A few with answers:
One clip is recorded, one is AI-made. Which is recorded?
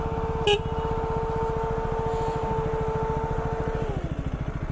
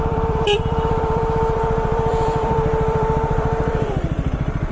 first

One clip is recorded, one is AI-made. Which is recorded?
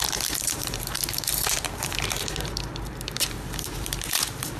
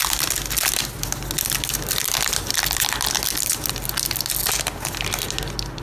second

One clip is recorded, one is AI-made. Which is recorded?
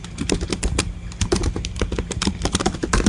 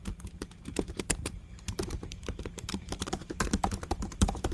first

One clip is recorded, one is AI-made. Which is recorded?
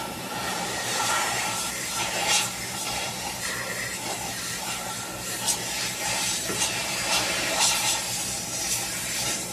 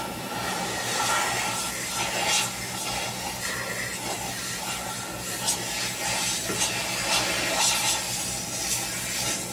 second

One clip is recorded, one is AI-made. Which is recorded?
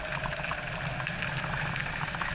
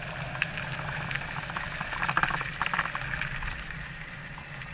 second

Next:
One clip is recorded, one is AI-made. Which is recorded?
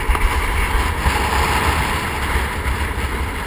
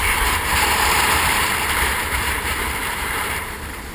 first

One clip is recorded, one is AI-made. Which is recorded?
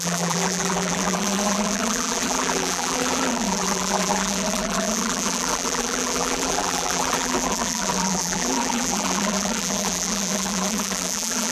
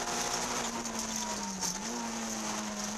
second